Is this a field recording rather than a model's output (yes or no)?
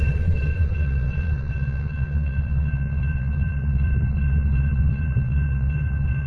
no